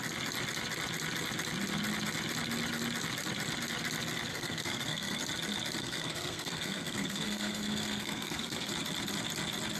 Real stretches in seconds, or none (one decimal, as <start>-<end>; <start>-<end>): 0.0-4.3; 5.2-5.8; 8.7-9.8